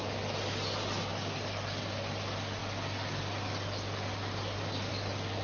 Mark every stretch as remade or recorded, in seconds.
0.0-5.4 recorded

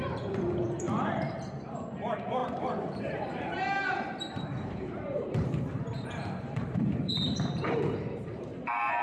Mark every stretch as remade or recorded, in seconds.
0.0-9.0 remade

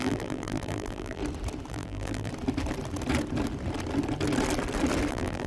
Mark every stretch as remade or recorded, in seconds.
0.0-1.2 remade; 1.2-1.7 recorded; 1.7-2.3 remade; 2.3-5.1 recorded; 5.1-5.5 remade

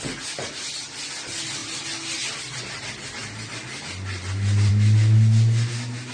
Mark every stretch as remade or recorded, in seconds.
0.0-6.1 recorded

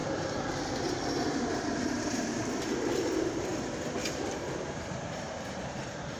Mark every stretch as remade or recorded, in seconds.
0.0-1.6 recorded; 1.6-3.5 remade; 3.5-4.3 recorded; 4.3-6.2 remade